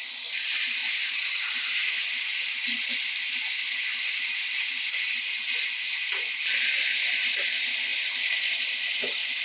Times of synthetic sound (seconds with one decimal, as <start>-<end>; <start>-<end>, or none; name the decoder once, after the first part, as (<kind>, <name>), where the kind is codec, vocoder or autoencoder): 0.0-9.4 (vocoder, BigVGAN v2)